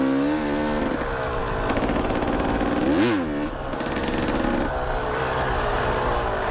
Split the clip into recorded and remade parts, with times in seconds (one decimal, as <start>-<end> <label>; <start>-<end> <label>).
0.0-6.5 recorded